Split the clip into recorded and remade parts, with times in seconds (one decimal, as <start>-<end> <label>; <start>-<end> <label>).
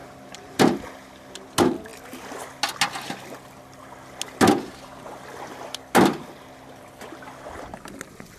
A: 0.0-0.8 remade; 0.8-8.4 recorded